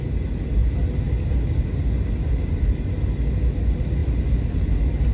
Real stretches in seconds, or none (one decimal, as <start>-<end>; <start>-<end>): 0.0-5.1